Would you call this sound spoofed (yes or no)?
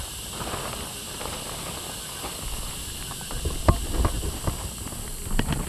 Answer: no